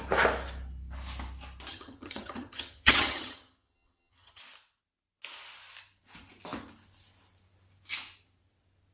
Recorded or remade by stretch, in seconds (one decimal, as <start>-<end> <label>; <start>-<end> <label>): 0.0-1.7 recorded; 1.7-4.4 remade; 4.4-8.9 recorded